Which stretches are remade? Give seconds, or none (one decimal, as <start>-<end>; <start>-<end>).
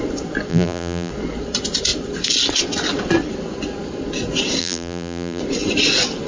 0.5-1.1; 4.6-5.4